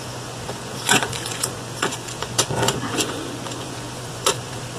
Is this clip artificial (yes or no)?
yes